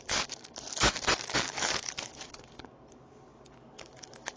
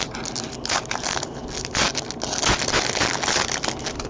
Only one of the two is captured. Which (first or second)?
second